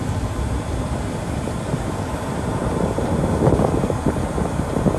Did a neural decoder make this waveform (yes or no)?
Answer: no